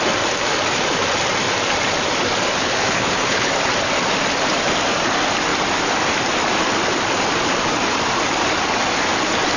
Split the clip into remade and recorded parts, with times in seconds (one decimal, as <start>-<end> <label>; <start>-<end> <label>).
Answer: 0.0-2.6 recorded; 2.6-3.5 remade; 3.5-9.6 recorded

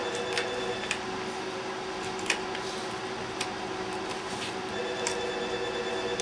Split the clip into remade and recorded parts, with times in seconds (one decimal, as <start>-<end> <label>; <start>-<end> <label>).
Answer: 0.0-6.2 recorded

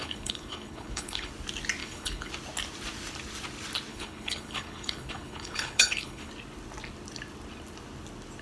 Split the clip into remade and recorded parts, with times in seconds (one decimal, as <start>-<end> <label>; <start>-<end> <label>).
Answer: 0.0-1.3 remade; 1.3-1.8 recorded; 1.8-2.3 remade; 2.3-3.9 recorded; 3.9-6.3 remade; 6.3-8.4 recorded

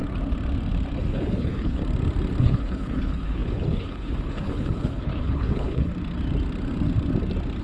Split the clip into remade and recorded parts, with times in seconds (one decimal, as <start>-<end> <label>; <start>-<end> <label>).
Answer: 0.0-1.0 recorded; 1.0-1.8 remade; 1.8-2.4 recorded; 2.4-5.9 remade; 5.9-7.6 recorded

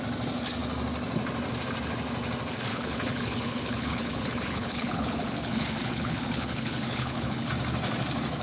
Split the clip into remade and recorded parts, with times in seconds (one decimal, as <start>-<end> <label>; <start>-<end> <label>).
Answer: 0.0-2.7 recorded; 2.7-7.5 remade; 7.5-8.4 recorded

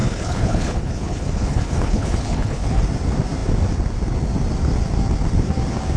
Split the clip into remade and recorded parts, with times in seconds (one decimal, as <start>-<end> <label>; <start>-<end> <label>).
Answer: 0.0-2.8 remade; 2.8-6.0 recorded